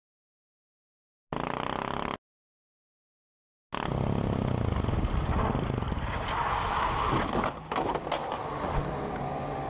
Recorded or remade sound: recorded